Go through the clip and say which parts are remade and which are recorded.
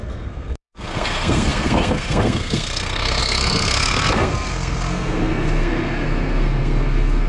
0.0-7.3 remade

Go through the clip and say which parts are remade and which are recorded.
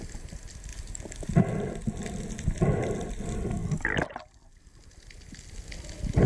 0.0-6.3 recorded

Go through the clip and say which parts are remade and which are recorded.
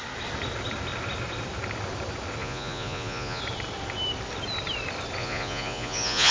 0.0-2.4 recorded; 2.4-3.4 remade; 3.4-5.2 recorded; 5.2-6.3 remade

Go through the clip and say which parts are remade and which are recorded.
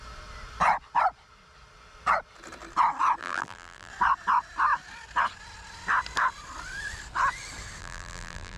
0.0-3.2 recorded; 3.2-3.9 remade; 3.9-7.8 recorded; 7.8-8.6 remade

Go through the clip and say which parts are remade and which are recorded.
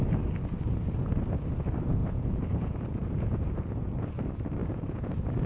0.0-2.0 recorded; 2.0-4.1 remade; 4.1-4.6 recorded; 4.6-5.1 remade; 5.1-5.5 recorded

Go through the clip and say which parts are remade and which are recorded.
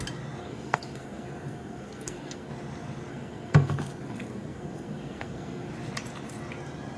0.0-0.4 recorded; 0.4-2.5 remade; 2.5-3.1 recorded; 3.1-5.7 remade; 5.7-7.0 recorded